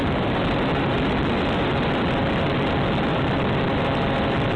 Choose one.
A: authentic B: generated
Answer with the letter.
A